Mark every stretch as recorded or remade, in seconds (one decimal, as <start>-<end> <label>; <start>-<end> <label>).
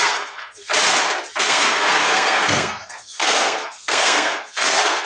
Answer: 0.0-0.7 remade; 0.7-1.4 recorded; 1.4-5.1 remade